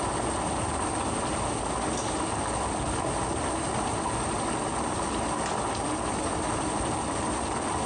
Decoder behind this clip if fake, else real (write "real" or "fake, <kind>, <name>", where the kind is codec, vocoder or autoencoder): real